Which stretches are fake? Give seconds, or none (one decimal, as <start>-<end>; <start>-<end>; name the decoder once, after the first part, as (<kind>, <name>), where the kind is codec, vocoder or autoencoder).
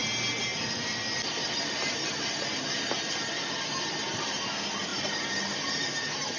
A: 0.5-2.1 (vocoder, BigVGAN v2); 4.9-5.9